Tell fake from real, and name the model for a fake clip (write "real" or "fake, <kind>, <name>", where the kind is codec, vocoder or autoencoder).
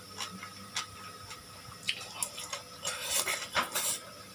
real